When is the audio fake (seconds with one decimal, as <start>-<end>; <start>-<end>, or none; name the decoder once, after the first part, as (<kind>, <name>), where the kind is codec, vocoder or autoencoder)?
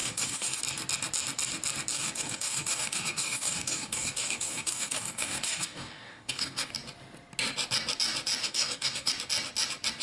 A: 0.0-0.6 (codec, DAC); 1.9-6.7; 8.4-9.1